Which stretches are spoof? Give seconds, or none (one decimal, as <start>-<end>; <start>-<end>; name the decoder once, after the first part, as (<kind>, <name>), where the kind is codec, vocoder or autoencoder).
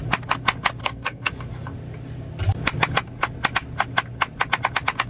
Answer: 0.8-1.3 (codec, SNAC)